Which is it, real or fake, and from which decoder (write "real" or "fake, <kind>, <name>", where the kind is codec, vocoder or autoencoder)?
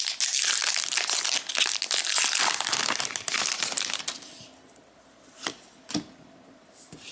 real